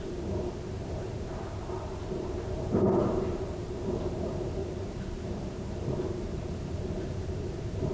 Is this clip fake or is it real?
fake